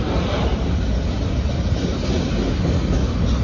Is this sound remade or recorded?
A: recorded